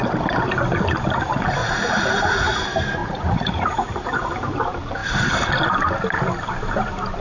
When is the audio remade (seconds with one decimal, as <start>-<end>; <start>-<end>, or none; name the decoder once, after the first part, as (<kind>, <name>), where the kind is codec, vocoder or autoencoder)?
1.6-2.6 (vocoder, Vocos); 3.0-4.3